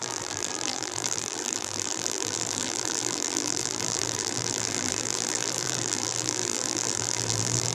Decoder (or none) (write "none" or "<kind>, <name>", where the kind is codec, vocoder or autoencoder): vocoder, BigVGAN v2